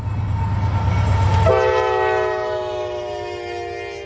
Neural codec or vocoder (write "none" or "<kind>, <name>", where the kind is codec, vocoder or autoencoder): none